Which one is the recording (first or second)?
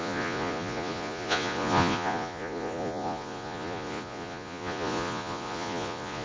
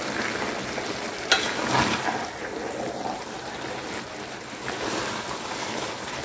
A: second